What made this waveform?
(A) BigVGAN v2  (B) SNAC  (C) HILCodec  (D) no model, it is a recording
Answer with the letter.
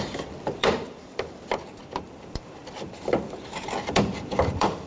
A